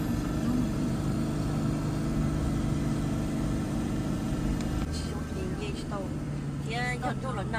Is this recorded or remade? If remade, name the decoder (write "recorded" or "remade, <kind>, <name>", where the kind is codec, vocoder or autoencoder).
recorded